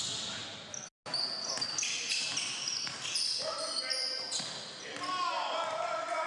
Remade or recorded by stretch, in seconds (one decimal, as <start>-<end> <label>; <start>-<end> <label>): 0.0-6.3 recorded